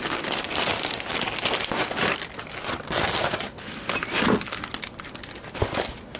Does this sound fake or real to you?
real